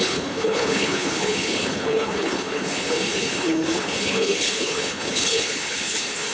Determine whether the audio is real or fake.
fake